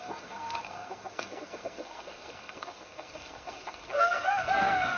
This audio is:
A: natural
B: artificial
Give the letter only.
B